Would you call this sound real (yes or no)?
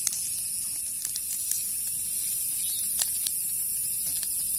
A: yes